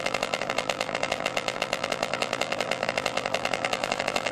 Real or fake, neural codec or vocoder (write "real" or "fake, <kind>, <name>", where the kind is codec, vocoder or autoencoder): fake, vocoder, BigVGAN v2